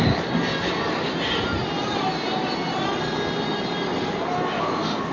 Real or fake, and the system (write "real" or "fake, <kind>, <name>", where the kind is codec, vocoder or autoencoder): real